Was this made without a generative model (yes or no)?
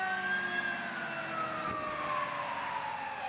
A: yes